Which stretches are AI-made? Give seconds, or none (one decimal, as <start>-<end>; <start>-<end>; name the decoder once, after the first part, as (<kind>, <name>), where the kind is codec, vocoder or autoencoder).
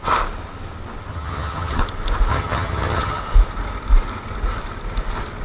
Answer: 1.1-1.8 (vocoder, HiFi-GAN); 2.3-3.2